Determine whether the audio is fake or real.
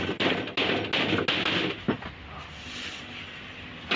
real